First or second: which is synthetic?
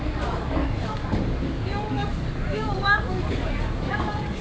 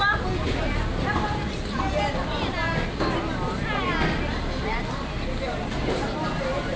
first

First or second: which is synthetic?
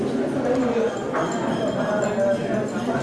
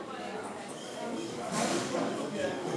second